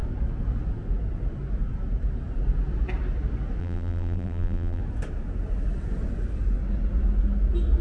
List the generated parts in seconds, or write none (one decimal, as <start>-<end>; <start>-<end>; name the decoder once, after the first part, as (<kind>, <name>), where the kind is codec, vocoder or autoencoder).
3.6-4.8 (vocoder, BigVGAN v2)